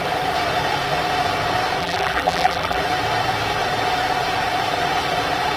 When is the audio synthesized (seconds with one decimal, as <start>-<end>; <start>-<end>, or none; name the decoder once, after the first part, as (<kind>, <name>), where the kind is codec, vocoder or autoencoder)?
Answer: 1.8-2.8 (vocoder, BigVGAN v2)